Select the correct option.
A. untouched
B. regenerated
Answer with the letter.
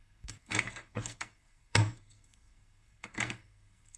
B